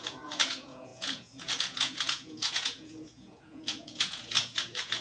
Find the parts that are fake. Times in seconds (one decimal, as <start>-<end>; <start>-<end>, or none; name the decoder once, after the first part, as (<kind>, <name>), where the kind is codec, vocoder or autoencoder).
0.0-5.0 (vocoder, Vocos)